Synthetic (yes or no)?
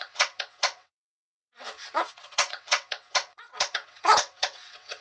yes